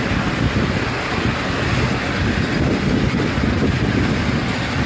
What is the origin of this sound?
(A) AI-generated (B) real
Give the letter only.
B